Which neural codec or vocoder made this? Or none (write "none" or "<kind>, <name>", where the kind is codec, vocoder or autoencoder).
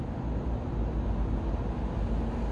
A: none